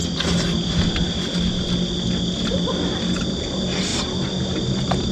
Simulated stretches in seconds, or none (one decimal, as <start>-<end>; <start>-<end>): none